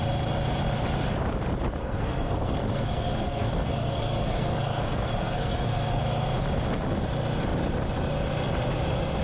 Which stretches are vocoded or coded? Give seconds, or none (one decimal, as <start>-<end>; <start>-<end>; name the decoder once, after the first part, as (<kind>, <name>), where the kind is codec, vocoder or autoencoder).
1.8-6.0 (codec, SNAC)